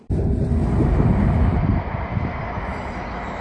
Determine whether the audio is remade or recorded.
recorded